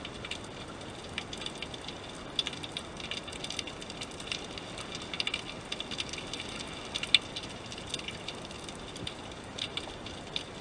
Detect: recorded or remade recorded